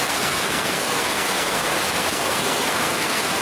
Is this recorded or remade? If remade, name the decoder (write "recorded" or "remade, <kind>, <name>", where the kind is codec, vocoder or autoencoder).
remade, codec, SNAC